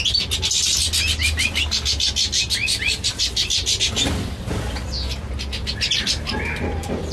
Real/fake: real